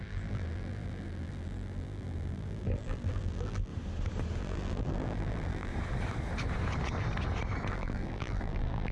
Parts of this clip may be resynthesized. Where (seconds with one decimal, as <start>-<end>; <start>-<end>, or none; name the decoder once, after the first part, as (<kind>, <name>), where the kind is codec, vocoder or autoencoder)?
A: 0.0-3.7 (vocoder, BigVGAN v2); 4.4-5.7; 7.7-8.9